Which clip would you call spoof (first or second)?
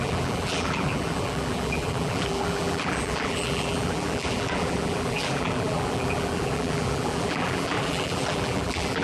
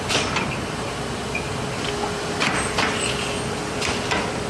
first